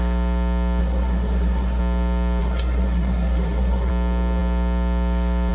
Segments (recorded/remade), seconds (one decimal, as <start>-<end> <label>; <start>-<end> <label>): 0.0-0.8 recorded; 0.8-1.8 remade; 1.8-2.4 recorded; 2.4-3.9 remade; 3.9-5.5 recorded